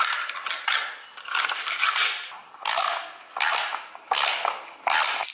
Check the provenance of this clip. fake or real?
real